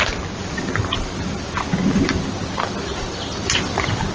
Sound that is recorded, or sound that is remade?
recorded